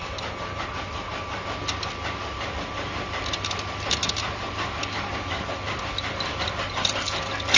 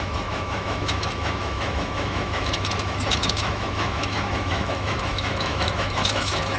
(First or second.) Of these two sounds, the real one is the first